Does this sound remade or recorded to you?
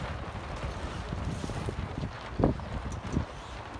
recorded